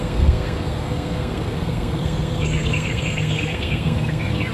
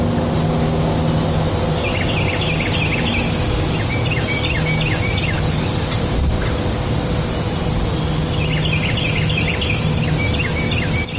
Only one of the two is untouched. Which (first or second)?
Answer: second